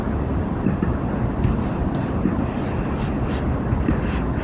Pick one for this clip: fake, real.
real